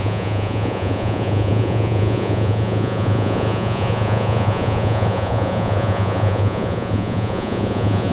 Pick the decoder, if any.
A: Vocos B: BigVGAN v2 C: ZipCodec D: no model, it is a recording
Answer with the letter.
A